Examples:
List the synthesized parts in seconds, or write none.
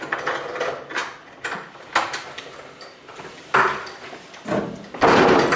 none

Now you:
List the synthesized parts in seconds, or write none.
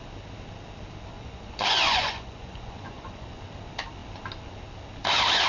1.1-3.4 (vocoder, Vocos)